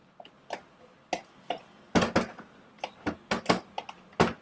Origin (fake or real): real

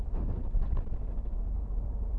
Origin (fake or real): fake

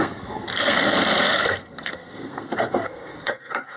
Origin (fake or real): fake